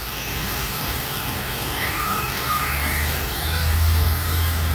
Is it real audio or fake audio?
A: fake